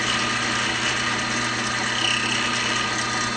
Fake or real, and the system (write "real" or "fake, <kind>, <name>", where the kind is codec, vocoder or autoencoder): real